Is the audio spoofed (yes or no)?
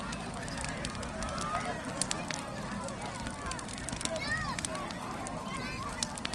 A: no